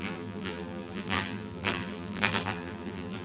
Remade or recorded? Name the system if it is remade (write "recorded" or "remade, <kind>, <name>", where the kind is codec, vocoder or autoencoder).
remade, vocoder, BigVGAN v2